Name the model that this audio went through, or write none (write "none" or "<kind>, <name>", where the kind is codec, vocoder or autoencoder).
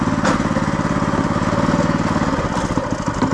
none